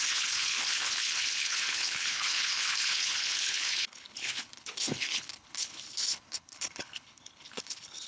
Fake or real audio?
fake